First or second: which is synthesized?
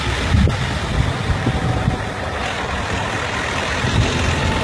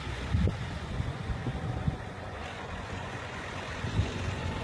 second